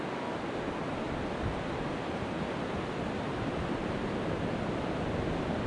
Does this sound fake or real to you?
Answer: real